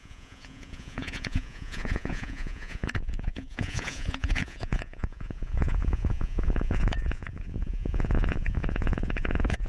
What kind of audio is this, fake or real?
fake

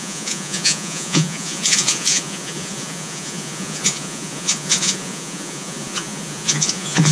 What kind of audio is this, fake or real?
fake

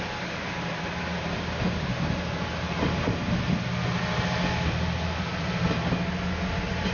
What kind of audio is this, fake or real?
real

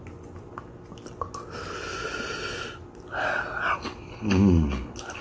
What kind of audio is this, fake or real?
real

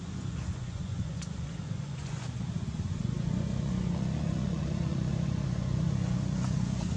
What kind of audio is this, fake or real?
fake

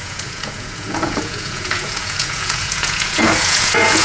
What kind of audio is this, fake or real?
fake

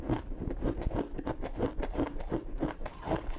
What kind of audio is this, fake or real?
real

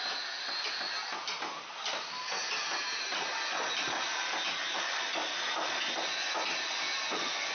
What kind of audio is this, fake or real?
real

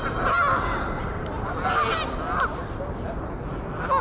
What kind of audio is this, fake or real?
real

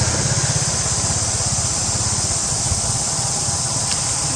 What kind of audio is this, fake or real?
real